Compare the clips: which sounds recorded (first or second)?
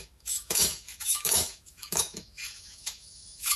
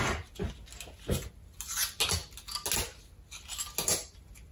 second